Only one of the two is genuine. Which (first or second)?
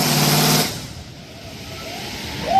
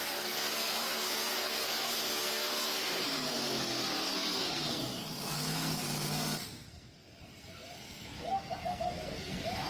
first